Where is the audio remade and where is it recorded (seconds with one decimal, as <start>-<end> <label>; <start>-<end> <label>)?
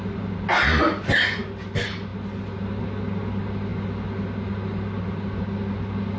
0.0-6.2 recorded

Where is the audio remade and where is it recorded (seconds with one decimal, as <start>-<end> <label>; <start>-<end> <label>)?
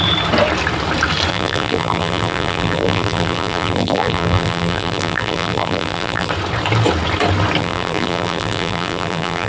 0.0-1.3 recorded; 1.3-6.3 remade; 6.3-7.6 recorded; 7.6-9.5 remade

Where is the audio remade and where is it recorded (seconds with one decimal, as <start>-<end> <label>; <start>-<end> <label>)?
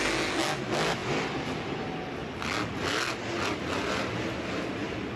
0.0-5.2 recorded